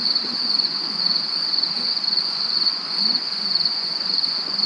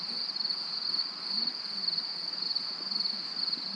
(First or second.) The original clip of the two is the second